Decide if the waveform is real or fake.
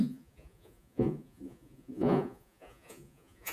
fake